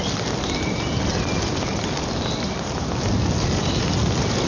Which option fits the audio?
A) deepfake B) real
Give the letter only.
B